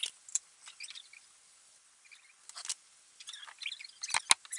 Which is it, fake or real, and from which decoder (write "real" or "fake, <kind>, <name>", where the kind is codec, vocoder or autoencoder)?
real